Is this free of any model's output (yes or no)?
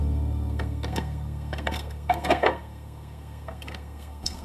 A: no